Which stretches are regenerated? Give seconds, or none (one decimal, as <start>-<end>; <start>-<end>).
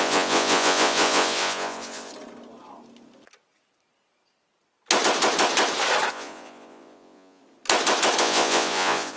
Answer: 0.0-2.1; 6.1-7.4; 8.2-9.2